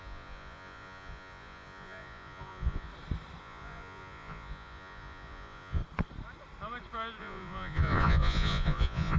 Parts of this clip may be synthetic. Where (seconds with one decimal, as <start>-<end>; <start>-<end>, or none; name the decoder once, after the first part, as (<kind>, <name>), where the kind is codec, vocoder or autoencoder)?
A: 0.0-2.9 (vocoder, Vocos); 3.4-5.8; 7.2-9.2